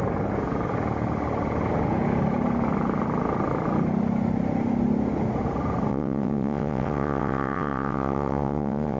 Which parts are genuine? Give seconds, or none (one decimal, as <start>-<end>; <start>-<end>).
0.0-5.9